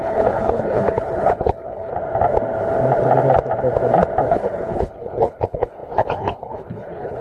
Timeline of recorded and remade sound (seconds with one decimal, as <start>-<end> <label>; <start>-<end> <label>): 0.0-1.9 remade; 1.9-4.3 recorded; 4.3-7.2 remade